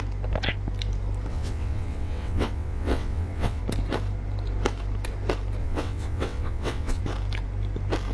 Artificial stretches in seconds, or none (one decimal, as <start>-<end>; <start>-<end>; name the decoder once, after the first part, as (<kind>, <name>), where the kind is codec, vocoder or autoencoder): 1.3-3.6 (vocoder, WaveNeXt); 5.6-7.0